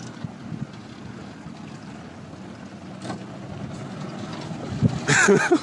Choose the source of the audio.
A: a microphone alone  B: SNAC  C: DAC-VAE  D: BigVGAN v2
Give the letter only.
A